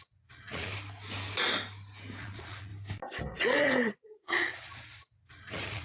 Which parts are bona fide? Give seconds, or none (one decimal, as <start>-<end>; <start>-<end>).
0.7-2.2; 2.7-3.2